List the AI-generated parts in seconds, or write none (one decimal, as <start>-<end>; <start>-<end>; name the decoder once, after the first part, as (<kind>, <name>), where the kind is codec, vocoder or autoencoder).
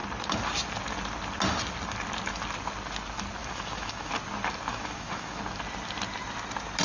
3.4-4.1 (autoencoder, DAC-VAE); 4.7-5.4